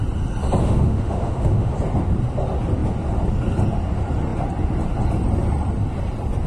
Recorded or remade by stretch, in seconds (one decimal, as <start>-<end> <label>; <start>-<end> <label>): 0.0-0.6 recorded; 0.6-1.7 remade; 1.7-6.5 recorded

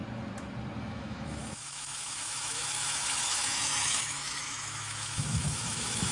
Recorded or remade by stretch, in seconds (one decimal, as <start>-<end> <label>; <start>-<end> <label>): 0.0-0.8 recorded; 0.8-6.1 remade

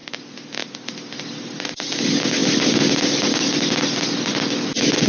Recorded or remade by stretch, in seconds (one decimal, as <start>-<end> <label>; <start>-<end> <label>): 0.0-5.1 recorded

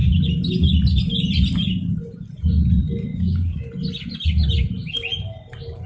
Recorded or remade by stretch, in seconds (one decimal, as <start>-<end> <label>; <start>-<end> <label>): 0.0-3.1 recorded; 3.1-3.7 remade; 3.7-5.9 recorded

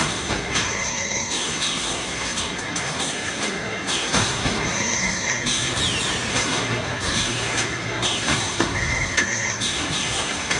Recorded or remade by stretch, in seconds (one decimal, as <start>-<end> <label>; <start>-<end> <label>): 0.0-5.8 remade; 5.8-6.3 recorded; 6.3-10.6 remade

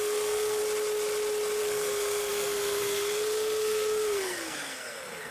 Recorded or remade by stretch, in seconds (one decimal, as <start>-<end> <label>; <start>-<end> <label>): 0.0-0.6 remade; 0.6-1.6 recorded; 1.6-5.3 remade

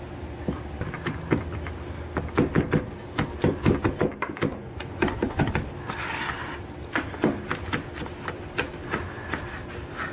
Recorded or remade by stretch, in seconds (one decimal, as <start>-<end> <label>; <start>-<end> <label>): 0.0-4.5 recorded; 4.5-5.4 remade; 5.4-10.1 recorded